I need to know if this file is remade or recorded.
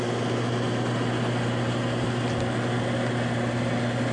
recorded